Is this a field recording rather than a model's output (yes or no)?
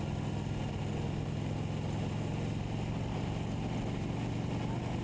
yes